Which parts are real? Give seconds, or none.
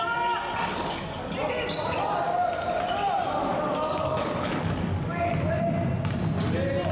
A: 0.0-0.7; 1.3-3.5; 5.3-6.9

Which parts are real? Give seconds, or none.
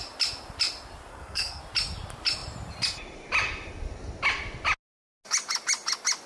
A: 0.0-1.1; 1.6-6.3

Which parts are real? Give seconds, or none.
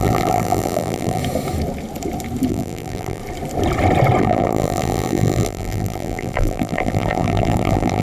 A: 1.2-2.5; 3.2-4.2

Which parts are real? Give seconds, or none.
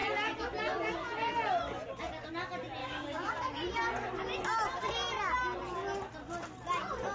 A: 0.0-2.8; 3.3-7.1